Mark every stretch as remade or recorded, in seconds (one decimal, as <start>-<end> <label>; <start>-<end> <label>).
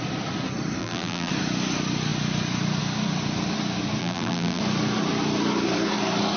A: 0.0-0.8 recorded; 0.8-1.3 remade; 1.3-4.0 recorded; 4.0-4.6 remade; 4.6-6.4 recorded